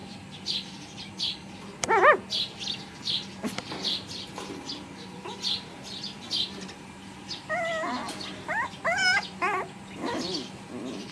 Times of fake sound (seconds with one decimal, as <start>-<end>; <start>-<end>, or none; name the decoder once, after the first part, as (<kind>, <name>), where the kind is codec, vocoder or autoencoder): none